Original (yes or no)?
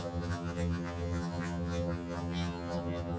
no